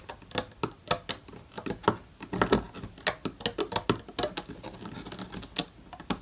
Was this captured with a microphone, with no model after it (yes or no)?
yes